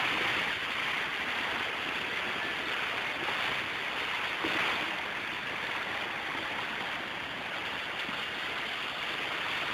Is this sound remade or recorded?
recorded